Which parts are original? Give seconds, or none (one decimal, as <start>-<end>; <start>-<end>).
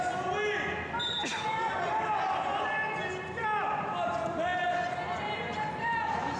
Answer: 0.0-6.4